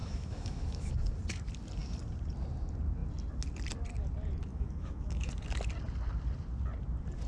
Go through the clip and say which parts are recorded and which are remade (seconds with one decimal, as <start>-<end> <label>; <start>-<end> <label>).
0.0-0.9 remade; 0.9-4.5 recorded; 4.5-5.3 remade; 5.3-7.3 recorded